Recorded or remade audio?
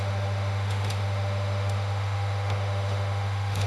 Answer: remade